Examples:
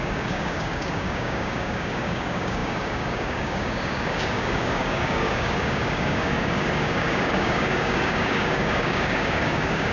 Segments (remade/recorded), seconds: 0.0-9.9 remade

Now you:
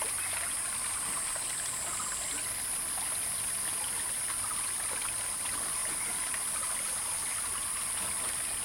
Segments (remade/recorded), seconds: 0.0-8.6 recorded

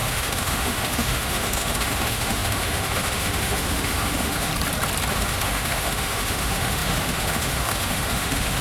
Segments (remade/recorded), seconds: 0.0-4.5 remade; 4.5-5.1 recorded; 5.1-8.6 remade